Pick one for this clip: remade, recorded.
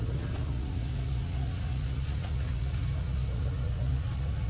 remade